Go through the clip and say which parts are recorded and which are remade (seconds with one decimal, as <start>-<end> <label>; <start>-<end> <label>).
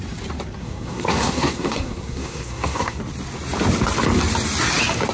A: 0.0-0.6 recorded; 0.6-3.0 remade; 3.0-5.1 recorded